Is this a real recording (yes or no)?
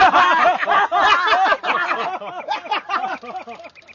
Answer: yes